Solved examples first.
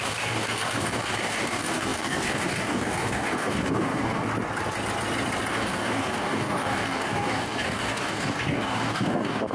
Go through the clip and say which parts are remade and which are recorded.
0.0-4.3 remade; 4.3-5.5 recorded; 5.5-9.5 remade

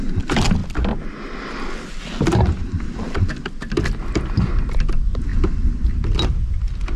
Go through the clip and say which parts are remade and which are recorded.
0.0-7.0 recorded

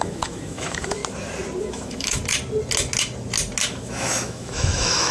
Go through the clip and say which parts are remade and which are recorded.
0.0-1.0 remade; 1.0-1.6 recorded; 1.6-2.2 remade; 2.2-3.7 recorded; 3.7-5.1 remade